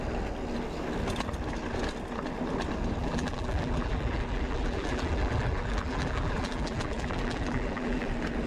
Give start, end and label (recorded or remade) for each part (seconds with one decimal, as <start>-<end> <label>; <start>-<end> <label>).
0.0-3.0 recorded; 3.0-8.1 remade; 8.1-8.5 recorded